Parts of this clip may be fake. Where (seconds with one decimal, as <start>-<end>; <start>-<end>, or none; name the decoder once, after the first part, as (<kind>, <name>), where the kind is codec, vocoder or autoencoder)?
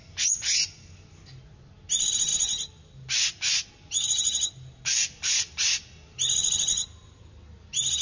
none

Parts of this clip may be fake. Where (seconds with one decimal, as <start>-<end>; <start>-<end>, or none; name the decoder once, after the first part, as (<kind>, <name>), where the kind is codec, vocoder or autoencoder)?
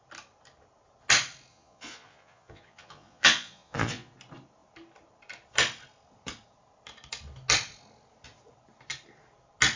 1.5-4.1 (vocoder, Vocos)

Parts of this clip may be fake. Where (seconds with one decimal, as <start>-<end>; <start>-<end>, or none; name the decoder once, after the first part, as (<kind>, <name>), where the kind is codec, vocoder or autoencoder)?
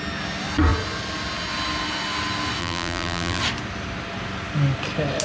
2.6-3.4 (vocoder, BigVGAN v2)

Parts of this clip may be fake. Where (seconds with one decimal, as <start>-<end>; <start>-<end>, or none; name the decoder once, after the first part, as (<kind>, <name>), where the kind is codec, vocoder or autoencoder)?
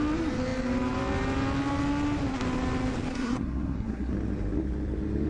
3.1-4.1 (codec, SNAC)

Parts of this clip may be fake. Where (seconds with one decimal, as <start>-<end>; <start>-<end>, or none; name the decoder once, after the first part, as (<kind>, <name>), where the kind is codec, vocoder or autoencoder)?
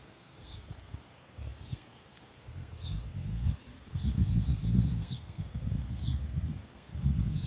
0.0-7.5 (codec, SNAC)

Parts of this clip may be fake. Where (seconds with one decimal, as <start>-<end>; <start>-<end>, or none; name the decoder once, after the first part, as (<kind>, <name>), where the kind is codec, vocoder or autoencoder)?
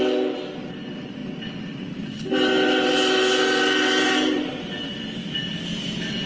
1.2-5.0 (vocoder, BigVGAN v2)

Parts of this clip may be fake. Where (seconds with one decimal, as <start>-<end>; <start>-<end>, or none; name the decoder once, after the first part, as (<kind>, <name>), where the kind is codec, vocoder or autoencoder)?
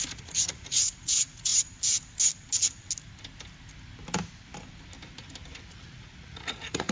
0.0-1.5 (vocoder, Vocos); 5.6-6.9